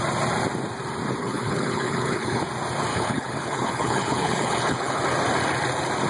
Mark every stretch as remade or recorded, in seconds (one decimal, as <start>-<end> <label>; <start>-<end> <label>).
0.0-1.2 recorded; 1.2-2.4 remade; 2.4-2.9 recorded; 2.9-5.0 remade; 5.0-6.1 recorded